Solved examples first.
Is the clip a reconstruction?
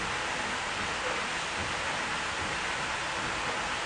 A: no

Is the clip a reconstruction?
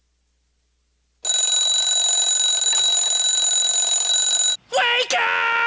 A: no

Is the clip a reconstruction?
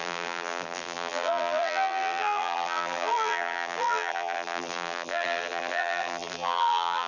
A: yes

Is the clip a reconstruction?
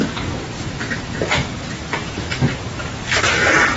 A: no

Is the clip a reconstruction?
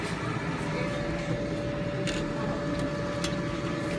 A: no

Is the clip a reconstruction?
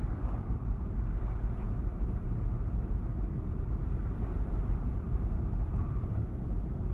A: yes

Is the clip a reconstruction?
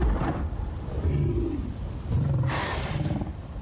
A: yes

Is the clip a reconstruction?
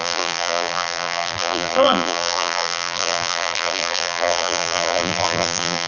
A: yes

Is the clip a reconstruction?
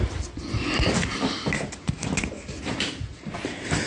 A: no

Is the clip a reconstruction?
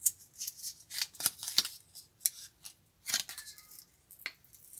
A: no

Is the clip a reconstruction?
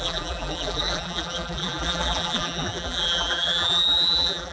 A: yes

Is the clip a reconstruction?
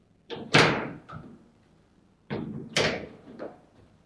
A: yes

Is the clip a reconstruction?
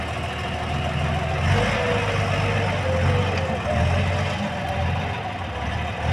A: no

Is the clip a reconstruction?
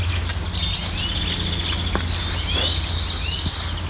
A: no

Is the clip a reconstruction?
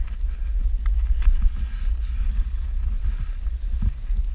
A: no